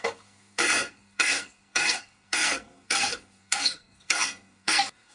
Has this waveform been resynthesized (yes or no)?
yes